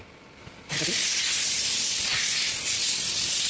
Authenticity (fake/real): real